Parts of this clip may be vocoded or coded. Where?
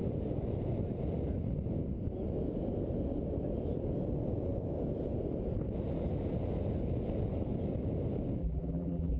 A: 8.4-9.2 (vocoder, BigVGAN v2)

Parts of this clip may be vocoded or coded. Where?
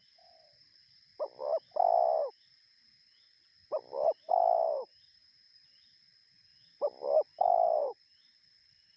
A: 0.0-1.1 (vocoder, BigVGAN v2); 2.3-3.6; 4.3-6.5; 7.4-9.0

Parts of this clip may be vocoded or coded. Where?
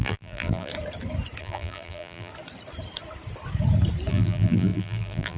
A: 0.0-0.7 (vocoder, BigVGAN v2); 1.4-2.3; 4.1-5.4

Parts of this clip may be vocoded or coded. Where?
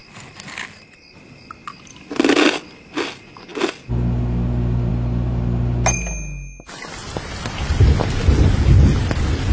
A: none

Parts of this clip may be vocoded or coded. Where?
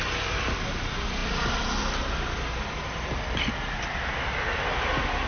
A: none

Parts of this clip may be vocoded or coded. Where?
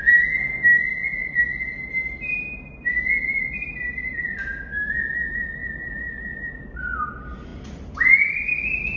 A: 7.5-9.0 (vocoder, BigVGAN v2)